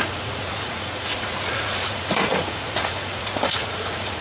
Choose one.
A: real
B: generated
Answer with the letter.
B